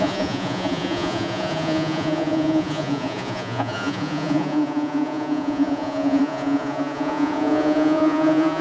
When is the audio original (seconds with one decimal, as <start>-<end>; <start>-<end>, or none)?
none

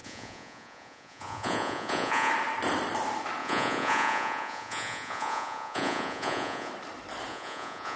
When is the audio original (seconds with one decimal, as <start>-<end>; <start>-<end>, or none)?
2.3-3.4; 6.7-7.3

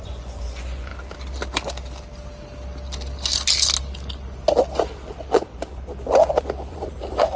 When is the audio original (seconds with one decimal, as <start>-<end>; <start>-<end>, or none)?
0.9-5.3; 5.9-6.7